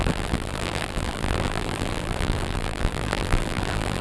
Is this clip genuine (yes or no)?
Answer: no